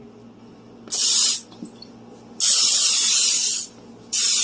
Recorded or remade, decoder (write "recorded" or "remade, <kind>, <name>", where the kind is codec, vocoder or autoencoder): recorded